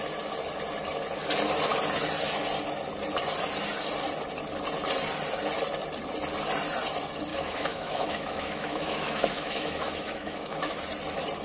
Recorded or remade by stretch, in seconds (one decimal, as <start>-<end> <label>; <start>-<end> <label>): 0.0-7.3 recorded; 7.3-10.8 remade; 10.8-11.4 recorded